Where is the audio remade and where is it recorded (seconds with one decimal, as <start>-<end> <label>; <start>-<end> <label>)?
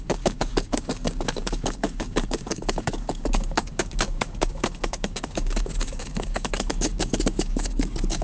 0.0-8.2 remade